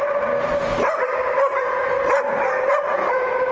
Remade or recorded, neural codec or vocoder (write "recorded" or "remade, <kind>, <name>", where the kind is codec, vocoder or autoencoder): recorded